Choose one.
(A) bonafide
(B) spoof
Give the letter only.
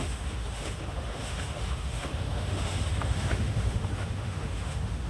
B